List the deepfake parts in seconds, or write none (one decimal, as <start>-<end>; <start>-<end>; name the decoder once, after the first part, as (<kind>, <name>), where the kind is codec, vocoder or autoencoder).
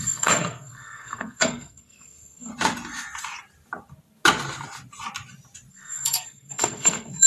0.0-2.5 (codec, SNAC); 5.7-7.3